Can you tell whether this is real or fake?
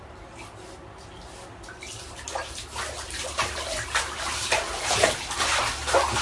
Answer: real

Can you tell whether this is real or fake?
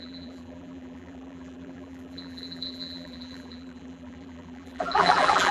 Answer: fake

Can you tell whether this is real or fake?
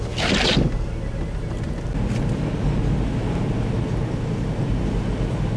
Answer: real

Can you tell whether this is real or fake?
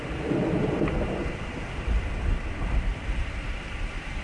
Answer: fake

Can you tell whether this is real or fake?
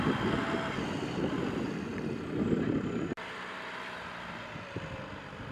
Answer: fake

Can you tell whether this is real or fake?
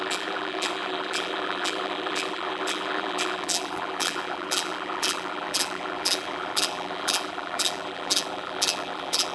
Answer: fake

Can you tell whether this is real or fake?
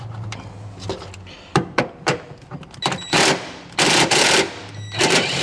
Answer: fake